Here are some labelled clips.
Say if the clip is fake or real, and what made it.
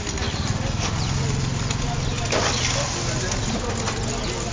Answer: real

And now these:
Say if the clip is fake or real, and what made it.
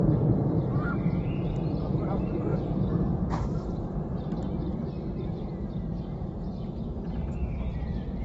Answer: fake, vocoder, BigVGAN v2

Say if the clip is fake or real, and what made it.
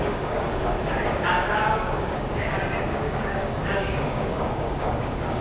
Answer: fake, codec, DAC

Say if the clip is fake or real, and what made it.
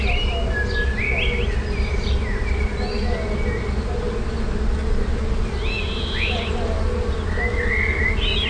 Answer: real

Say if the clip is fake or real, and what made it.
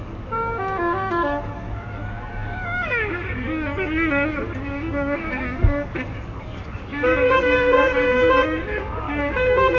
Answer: fake, codec, DAC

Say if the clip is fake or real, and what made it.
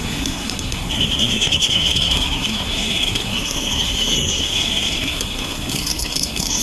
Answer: fake, codec, SNAC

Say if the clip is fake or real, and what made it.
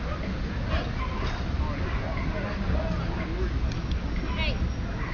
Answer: real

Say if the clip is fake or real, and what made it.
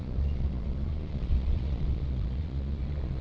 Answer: fake, vocoder, Vocos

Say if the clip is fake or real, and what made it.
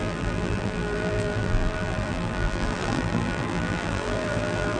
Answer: fake, vocoder, BigVGAN v2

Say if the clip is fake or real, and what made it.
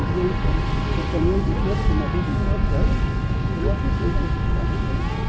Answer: real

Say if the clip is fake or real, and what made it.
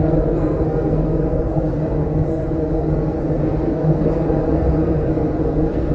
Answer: fake, codec, SNAC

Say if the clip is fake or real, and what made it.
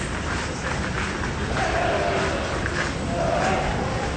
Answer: real